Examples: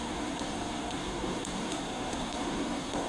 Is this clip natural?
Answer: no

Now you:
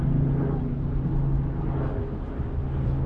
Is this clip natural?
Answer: yes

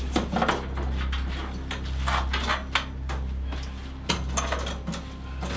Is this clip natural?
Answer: yes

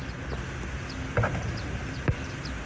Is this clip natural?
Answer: yes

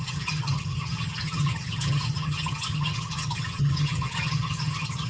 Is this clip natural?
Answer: no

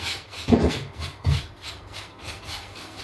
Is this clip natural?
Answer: no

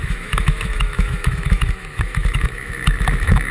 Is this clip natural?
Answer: no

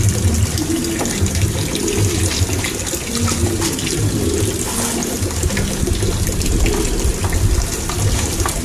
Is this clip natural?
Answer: yes